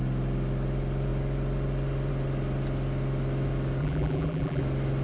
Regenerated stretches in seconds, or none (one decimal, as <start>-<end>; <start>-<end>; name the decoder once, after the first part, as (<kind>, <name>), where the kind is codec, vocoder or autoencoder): 3.8-4.6 (vocoder, BigVGAN v2)